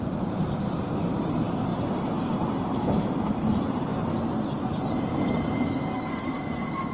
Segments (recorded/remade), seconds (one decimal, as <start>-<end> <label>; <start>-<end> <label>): 0.0-1.7 remade; 1.7-2.5 recorded; 2.5-3.9 remade; 3.9-6.2 recorded; 6.2-6.9 remade